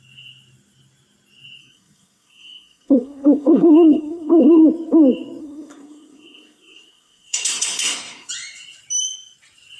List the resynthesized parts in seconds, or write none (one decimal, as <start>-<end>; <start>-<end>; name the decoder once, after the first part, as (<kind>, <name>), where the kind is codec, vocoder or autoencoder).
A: 1.6-4.6 (codec, SNAC); 5.4-8.3

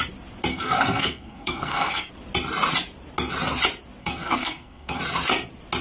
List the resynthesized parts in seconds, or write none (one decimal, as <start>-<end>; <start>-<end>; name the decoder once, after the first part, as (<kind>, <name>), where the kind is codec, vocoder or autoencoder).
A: 0.5-2.1 (codec, SNAC); 4.0-5.0